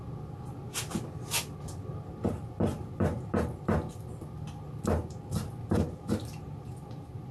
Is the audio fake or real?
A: real